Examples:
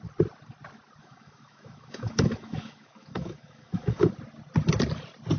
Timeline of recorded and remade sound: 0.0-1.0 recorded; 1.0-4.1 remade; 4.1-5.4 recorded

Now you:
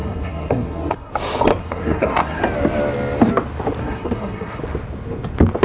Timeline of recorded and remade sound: 0.0-1.1 remade; 1.1-1.6 recorded; 1.6-2.4 remade; 2.4-3.8 recorded; 3.8-4.6 remade; 4.6-5.6 recorded

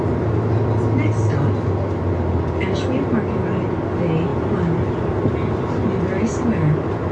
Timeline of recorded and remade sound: 0.0-7.1 recorded

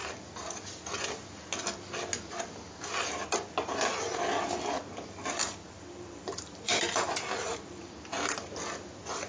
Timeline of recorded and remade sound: 0.0-5.2 recorded; 5.2-7.9 remade; 7.9-9.3 recorded

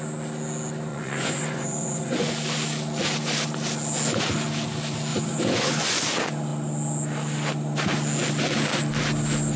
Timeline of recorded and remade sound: 0.0-0.9 recorded; 0.9-2.3 remade; 2.3-5.1 recorded; 5.1-6.0 remade; 6.0-9.6 recorded